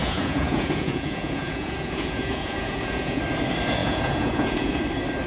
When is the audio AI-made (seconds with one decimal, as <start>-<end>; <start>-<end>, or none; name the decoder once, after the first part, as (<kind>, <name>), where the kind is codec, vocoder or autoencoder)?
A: 0.0-3.2 (vocoder, Vocos); 3.8-4.8

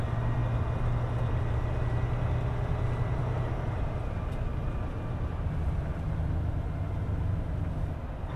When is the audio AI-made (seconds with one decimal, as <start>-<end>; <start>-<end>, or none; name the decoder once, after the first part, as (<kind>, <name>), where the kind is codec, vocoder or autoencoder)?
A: none

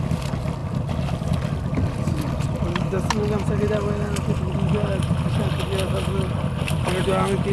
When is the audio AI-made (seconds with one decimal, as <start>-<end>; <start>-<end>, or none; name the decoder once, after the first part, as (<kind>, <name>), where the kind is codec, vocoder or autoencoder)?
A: none